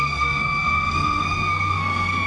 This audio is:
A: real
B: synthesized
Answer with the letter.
B